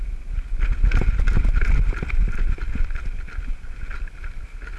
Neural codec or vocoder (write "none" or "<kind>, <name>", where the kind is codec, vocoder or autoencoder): none